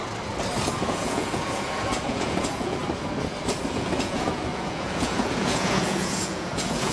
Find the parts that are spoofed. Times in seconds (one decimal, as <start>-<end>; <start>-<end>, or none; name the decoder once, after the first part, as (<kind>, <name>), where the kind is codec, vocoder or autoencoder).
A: 0.8-2.8 (vocoder, Vocos); 3.7-6.9